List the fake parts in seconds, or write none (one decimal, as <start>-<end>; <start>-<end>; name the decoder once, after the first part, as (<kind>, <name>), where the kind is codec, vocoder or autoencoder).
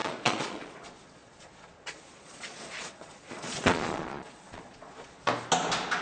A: 0.0-5.3 (vocoder, Vocos)